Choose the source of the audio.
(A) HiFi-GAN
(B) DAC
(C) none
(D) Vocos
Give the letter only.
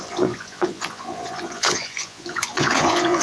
D